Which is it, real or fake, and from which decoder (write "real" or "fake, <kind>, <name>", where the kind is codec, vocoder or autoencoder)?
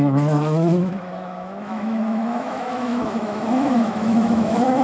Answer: fake, autoencoder, DAC-VAE